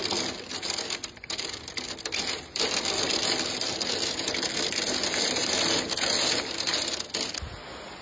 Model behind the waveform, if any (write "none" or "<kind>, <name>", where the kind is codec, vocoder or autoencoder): none